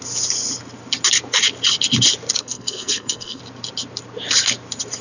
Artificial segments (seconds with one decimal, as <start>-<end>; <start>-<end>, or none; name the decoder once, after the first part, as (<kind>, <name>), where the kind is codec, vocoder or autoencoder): 2.4-3.4 (codec, SNAC)